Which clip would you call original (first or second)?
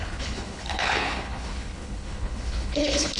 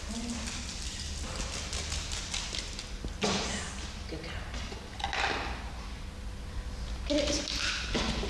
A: second